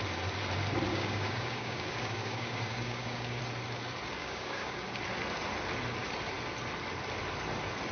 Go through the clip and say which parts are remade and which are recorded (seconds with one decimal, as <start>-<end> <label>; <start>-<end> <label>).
0.0-0.9 recorded; 0.9-3.4 remade; 3.4-4.2 recorded; 4.2-5.0 remade; 5.0-7.9 recorded